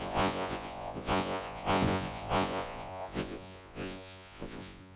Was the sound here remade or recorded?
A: remade